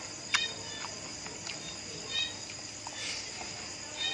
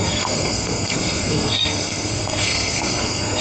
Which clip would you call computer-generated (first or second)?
second